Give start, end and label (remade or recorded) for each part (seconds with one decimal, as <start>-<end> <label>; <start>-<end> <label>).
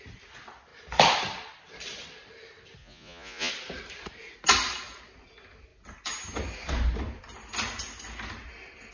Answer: 0.0-2.8 recorded; 2.8-3.5 remade; 3.5-8.9 recorded